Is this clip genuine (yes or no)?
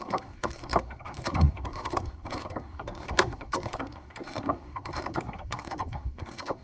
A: no